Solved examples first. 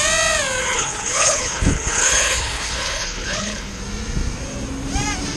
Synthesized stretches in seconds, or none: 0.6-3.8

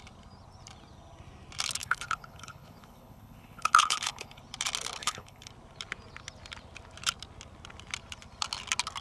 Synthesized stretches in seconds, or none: 1.8-4.4; 5.0-5.5

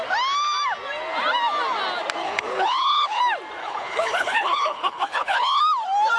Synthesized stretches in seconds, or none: 2.2-3.2; 3.6-5.6

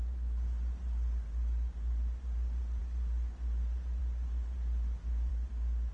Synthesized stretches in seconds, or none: none